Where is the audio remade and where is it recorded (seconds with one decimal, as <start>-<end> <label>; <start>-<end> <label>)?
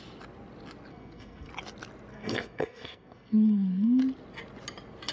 0.0-0.9 recorded; 0.9-1.5 remade; 1.5-2.1 recorded; 2.1-4.0 remade; 4.0-5.1 recorded